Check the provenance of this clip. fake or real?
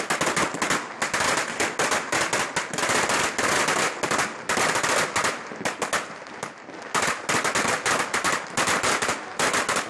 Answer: real